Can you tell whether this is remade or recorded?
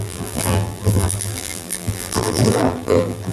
remade